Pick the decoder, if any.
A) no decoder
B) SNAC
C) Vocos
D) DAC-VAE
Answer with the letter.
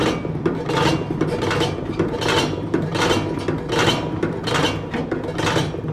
A